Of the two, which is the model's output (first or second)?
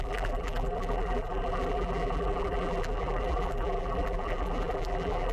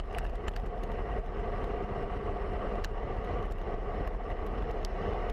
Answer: first